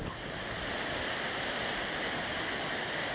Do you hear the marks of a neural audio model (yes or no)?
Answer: no